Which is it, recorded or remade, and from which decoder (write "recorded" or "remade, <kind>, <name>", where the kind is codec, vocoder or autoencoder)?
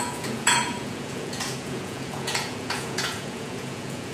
remade, vocoder, Vocos